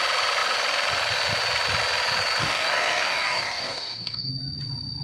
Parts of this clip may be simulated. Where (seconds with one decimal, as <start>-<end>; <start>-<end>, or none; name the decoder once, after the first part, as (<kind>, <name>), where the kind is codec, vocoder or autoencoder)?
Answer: 2.4-4.3 (codec, DAC)